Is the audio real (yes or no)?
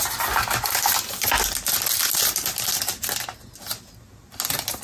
yes